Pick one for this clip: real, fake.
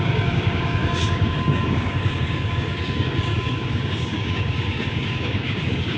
fake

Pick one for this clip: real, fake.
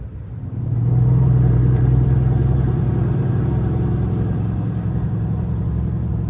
fake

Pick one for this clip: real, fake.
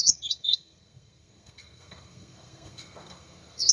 fake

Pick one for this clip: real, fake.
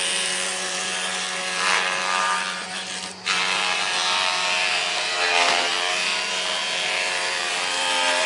fake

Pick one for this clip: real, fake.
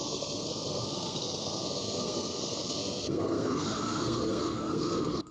fake